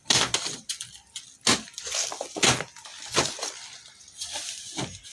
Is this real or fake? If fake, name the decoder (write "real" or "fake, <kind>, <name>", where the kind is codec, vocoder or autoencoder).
real